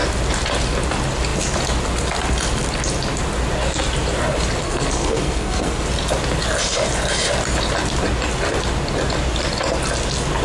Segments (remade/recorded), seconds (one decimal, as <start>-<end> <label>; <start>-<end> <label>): 0.0-4.6 recorded; 4.6-5.8 remade; 5.8-10.4 recorded